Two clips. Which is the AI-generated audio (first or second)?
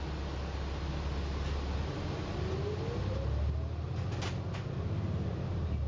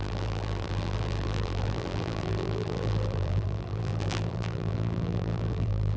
second